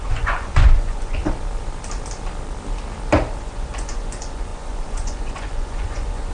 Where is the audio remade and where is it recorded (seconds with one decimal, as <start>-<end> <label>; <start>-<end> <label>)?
0.0-1.2 remade; 1.2-3.4 recorded; 3.4-6.3 remade